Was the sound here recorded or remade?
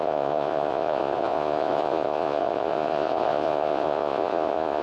remade